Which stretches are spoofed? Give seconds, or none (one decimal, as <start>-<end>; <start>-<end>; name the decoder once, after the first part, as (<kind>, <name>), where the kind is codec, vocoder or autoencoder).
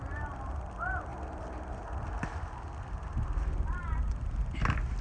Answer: none